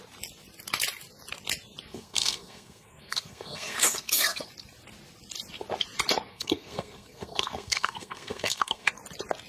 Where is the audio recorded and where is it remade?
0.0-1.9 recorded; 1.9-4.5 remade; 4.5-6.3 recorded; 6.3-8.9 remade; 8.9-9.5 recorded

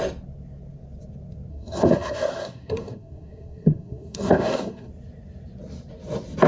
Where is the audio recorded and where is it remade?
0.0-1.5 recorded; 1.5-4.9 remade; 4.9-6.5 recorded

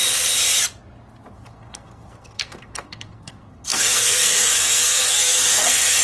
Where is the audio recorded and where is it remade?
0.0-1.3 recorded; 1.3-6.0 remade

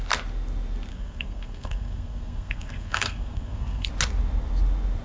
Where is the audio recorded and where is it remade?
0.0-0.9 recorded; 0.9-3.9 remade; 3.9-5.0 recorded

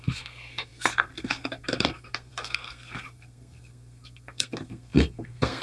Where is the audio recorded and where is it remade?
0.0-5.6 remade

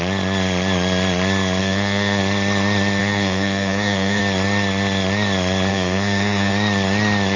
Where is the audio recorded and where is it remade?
0.0-1.6 recorded; 1.6-2.2 remade; 2.2-3.0 recorded; 3.0-4.2 remade; 4.2-5.7 recorded; 5.7-6.5 remade; 6.5-7.4 recorded

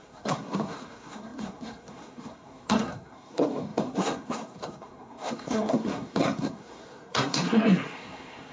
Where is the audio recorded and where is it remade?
0.0-8.5 remade